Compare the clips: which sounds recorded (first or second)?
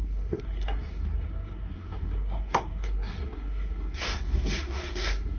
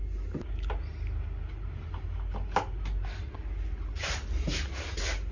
second